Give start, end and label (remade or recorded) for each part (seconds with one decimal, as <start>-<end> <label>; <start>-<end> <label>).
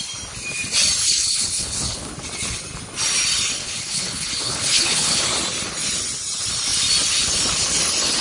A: 0.0-1.0 recorded; 1.0-2.1 remade; 2.1-3.6 recorded; 3.6-5.2 remade; 5.2-8.2 recorded